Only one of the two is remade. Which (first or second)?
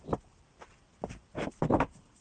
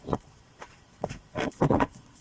second